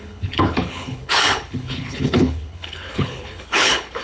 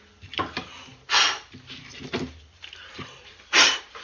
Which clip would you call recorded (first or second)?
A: second